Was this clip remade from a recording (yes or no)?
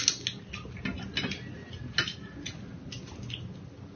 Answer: no